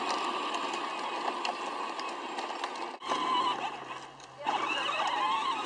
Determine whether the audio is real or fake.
real